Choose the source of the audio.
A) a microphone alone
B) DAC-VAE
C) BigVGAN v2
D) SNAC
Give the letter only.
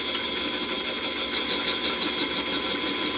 A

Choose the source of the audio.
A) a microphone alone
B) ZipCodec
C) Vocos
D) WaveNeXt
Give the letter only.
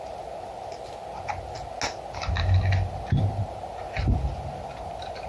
A